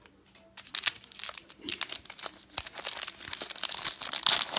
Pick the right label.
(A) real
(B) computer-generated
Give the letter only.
A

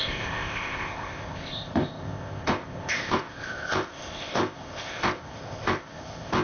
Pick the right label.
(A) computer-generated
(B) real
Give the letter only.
A